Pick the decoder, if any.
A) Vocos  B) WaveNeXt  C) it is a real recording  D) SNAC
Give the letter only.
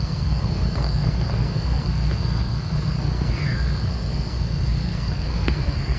D